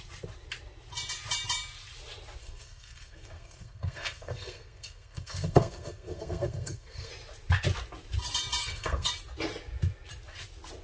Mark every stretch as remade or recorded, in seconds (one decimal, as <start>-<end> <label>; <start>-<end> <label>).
0.0-2.4 recorded; 2.4-7.1 remade; 7.1-8.6 recorded; 8.6-9.1 remade; 9.1-10.8 recorded